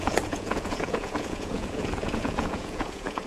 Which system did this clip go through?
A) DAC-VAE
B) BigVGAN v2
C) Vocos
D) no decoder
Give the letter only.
C